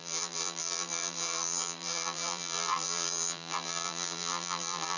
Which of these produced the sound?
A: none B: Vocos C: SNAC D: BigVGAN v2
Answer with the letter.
D